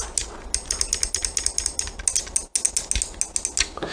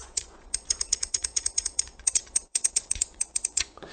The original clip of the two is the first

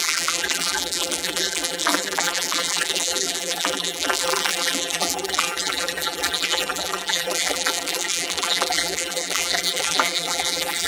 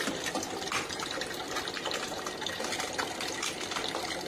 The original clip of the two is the second